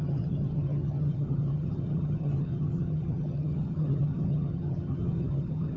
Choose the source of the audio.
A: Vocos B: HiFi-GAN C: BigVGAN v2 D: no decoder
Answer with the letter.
B